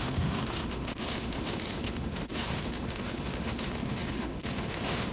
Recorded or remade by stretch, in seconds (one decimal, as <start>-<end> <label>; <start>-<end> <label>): 0.0-5.1 remade